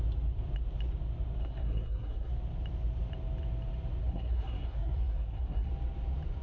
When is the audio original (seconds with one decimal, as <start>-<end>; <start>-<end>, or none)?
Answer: 0.0-1.4; 2.3-4.0; 5.7-6.4